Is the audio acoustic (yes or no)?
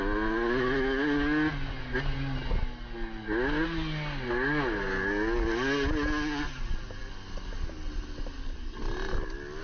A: yes